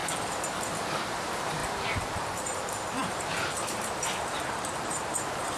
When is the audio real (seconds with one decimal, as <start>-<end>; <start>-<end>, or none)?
0.0-0.5

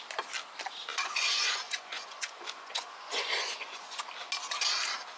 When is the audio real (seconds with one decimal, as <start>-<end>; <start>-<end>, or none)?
0.0-0.9; 4.0-5.2

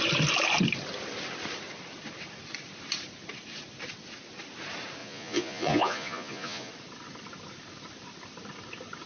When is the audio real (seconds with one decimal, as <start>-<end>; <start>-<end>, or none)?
0.0-5.0; 6.7-9.1

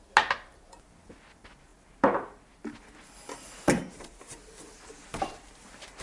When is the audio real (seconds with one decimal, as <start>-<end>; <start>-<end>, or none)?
0.0-6.0

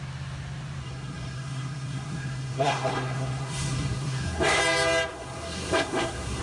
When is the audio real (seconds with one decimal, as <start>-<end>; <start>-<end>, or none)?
0.0-0.8; 4.6-5.1

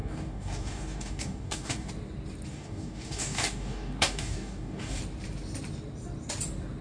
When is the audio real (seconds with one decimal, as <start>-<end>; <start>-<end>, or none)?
1.9-2.5; 5.0-6.8

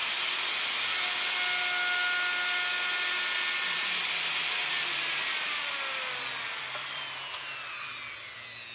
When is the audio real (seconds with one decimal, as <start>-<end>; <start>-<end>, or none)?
0.0-8.7

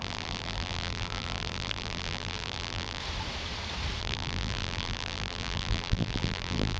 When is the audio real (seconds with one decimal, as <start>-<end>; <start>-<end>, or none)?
3.0-4.0